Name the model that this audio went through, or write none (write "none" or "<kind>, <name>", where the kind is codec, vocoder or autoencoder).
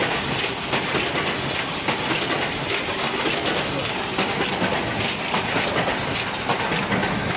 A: none